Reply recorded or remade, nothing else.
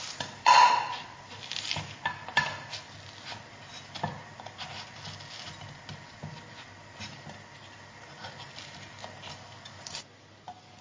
recorded